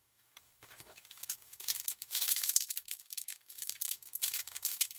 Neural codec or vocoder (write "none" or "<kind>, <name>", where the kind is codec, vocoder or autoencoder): codec, DAC